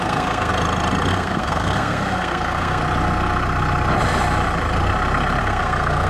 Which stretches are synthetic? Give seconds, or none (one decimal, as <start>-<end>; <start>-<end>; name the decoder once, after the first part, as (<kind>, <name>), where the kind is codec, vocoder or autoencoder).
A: 0.0-0.5 (codec, SNAC); 1.1-2.8; 5.4-6.1